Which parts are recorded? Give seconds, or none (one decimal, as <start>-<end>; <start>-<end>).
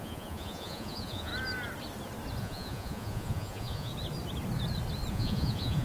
1.3-2.4; 3.9-5.1